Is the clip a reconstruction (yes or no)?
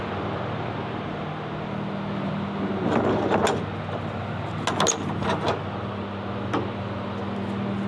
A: no